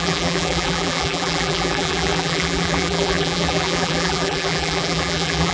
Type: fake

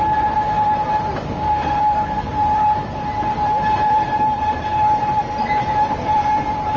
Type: fake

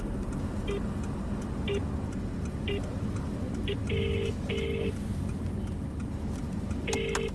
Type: real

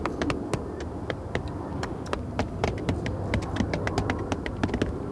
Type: real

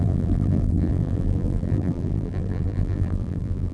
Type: fake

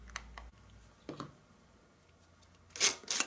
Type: real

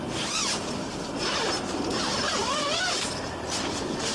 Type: real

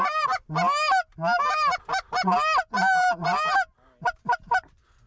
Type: real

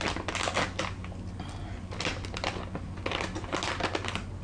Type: real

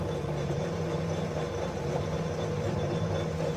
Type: fake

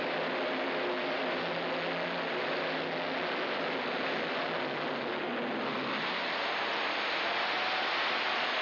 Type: real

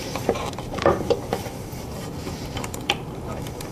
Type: fake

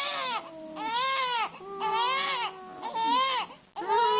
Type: real